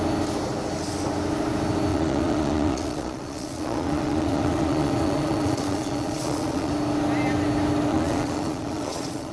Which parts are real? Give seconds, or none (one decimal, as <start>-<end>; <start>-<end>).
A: 0.0-1.9; 6.7-7.9